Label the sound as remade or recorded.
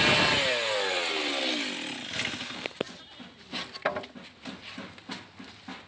recorded